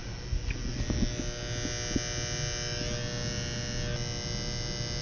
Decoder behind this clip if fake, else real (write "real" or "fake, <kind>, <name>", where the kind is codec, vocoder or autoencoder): real